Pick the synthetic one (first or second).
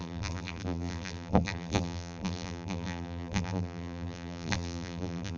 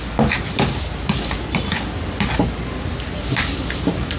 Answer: first